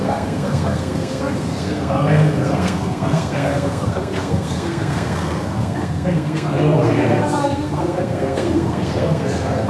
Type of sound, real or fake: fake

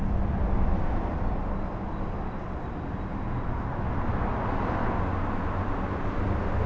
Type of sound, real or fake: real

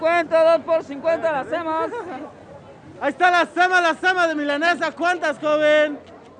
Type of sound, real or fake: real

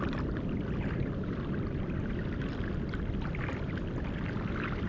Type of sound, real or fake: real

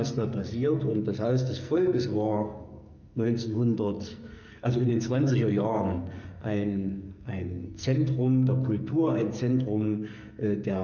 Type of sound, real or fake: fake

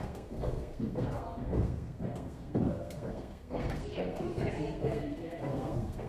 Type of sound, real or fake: fake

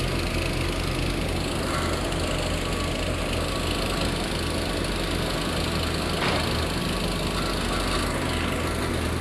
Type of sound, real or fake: real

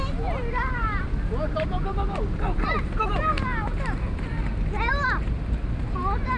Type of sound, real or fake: real